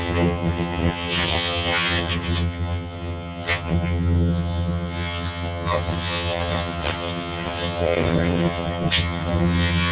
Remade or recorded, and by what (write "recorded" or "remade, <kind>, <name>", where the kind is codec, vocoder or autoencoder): remade, vocoder, HiFi-GAN